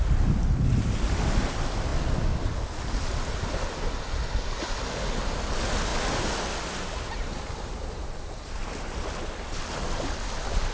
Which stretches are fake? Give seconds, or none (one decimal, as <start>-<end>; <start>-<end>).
none